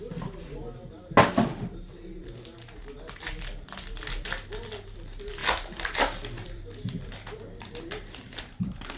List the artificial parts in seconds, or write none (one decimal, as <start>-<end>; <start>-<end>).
5.4-8.4